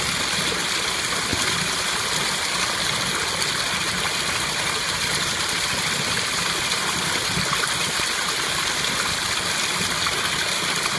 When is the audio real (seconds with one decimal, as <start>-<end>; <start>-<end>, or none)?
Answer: 0.0-11.0